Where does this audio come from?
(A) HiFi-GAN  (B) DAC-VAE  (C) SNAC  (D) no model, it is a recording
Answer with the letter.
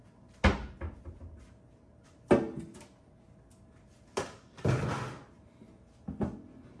D